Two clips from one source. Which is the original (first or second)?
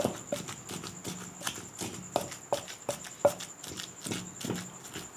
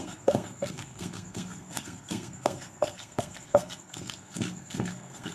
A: first